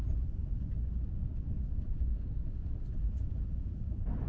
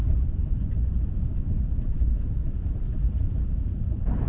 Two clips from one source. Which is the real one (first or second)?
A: first